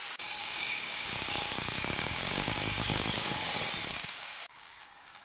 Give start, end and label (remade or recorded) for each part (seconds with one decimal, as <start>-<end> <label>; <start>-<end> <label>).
0.0-0.4 recorded; 0.4-3.5 remade; 3.5-3.9 recorded; 3.9-5.2 remade